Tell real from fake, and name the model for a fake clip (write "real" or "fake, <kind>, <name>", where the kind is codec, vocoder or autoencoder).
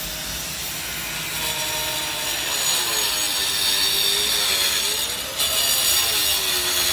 real